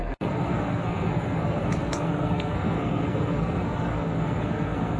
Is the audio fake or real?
fake